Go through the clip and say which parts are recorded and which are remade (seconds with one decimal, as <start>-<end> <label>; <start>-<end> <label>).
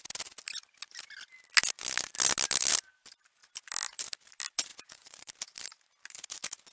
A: 0.0-4.7 recorded; 4.7-5.3 remade; 5.3-6.7 recorded